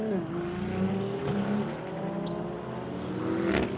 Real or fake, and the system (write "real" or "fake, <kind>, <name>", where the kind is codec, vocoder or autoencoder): real